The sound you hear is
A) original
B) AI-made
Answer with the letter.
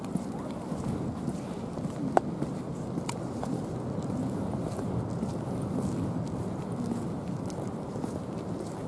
A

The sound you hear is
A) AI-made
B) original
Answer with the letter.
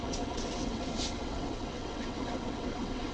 A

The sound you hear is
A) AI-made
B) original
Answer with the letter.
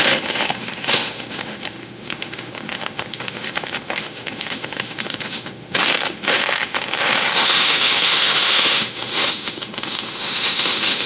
A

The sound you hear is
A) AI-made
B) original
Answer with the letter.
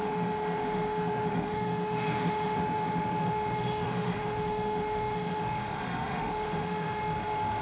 A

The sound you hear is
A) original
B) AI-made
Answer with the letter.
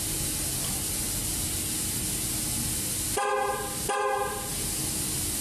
A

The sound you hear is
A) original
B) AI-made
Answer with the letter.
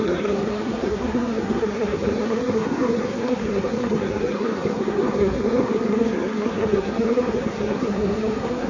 B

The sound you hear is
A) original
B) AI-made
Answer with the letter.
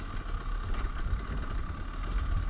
A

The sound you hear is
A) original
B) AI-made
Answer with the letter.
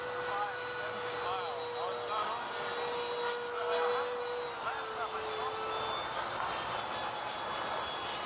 A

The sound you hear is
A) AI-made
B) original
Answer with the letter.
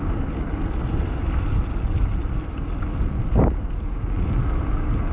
B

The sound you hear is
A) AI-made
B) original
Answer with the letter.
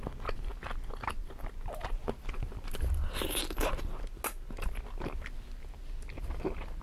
B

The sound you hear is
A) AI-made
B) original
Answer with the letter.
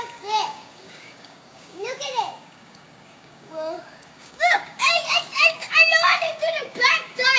A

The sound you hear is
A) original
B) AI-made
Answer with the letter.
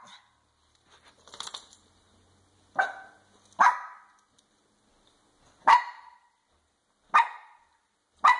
A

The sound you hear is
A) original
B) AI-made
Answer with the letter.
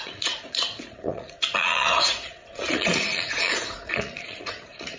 B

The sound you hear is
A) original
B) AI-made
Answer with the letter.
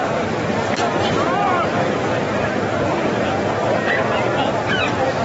A